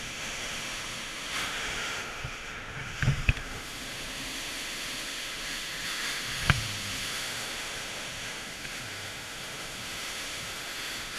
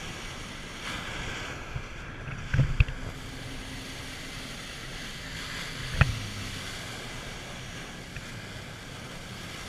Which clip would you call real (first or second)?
second